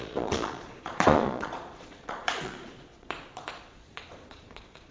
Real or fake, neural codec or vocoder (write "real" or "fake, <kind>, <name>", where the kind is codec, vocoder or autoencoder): fake, vocoder, Vocos